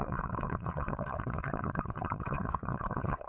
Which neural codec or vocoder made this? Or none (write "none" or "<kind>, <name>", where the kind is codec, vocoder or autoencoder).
vocoder, WaveNeXt